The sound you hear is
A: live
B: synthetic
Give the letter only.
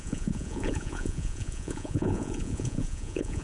B